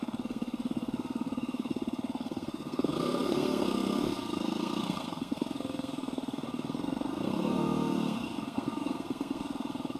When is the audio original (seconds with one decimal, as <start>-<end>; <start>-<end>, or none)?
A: none